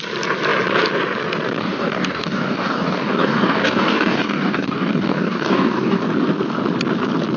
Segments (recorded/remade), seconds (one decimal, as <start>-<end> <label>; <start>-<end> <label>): 0.0-1.6 recorded; 1.6-6.0 remade; 6.0-7.4 recorded